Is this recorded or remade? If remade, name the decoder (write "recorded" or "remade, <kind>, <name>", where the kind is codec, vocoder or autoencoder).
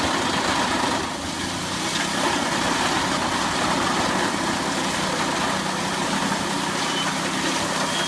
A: recorded